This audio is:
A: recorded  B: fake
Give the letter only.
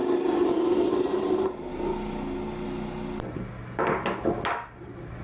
A